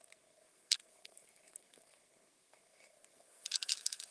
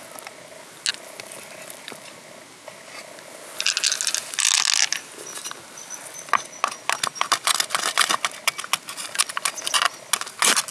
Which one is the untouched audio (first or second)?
second